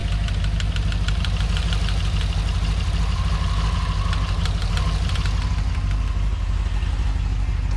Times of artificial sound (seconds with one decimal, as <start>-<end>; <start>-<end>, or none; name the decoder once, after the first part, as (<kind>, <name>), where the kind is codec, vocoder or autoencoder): none